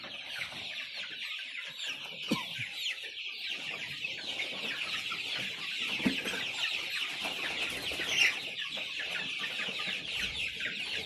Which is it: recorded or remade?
recorded